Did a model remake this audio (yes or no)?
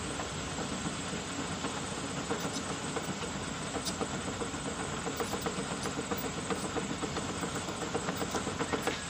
no